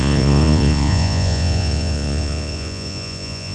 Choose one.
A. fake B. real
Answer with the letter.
A